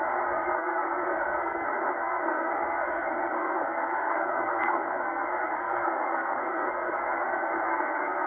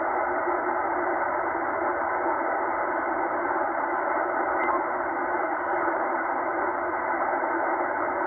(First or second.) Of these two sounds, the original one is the second